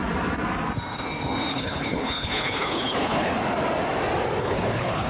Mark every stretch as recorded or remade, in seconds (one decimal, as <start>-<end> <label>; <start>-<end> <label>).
0.0-1.5 recorded; 1.5-3.3 remade; 3.3-4.4 recorded; 4.4-5.1 remade